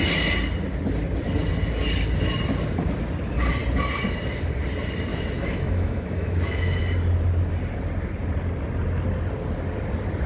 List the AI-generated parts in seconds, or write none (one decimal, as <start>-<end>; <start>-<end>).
5.1-6.8